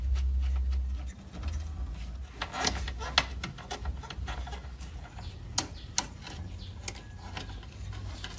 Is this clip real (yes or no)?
yes